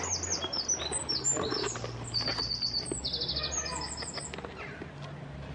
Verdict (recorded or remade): recorded